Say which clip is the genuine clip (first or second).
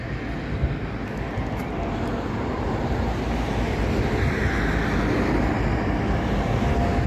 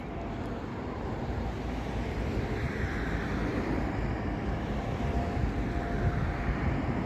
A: first